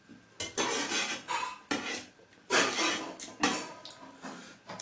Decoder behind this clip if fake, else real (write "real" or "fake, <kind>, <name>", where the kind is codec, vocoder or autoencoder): real